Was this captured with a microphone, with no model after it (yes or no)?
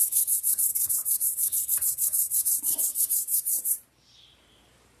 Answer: no